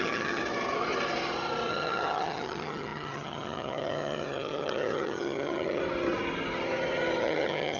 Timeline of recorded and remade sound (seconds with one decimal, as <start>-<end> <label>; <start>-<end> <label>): 0.0-0.4 remade; 0.4-1.7 recorded; 1.7-5.8 remade; 5.8-7.2 recorded; 7.2-7.8 remade